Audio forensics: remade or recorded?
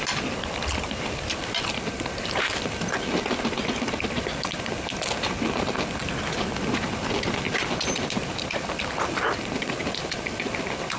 recorded